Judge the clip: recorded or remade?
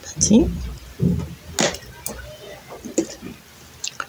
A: recorded